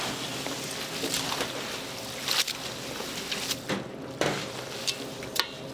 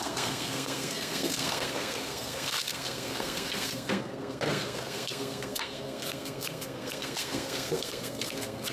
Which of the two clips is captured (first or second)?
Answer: first